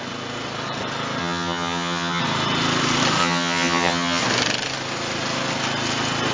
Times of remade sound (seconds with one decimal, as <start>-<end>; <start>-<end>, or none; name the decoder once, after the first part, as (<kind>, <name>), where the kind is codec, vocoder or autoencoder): 1.2-2.2 (vocoder, HiFi-GAN); 3.2-4.2